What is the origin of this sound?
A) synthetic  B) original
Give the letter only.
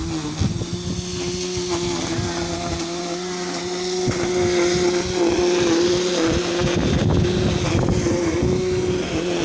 B